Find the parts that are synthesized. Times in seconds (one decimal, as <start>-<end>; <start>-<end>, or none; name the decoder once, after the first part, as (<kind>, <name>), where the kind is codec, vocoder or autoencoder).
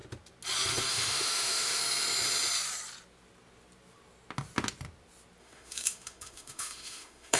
0.9-1.8 (autoencoder, DAC-VAE); 5.4-7.4